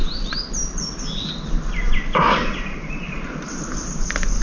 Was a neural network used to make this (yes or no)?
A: no